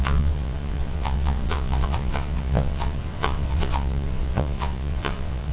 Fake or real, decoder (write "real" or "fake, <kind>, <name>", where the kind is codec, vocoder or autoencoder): fake, vocoder, WaveNeXt